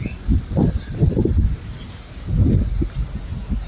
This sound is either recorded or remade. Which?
recorded